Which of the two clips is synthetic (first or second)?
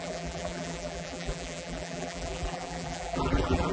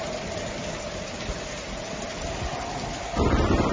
first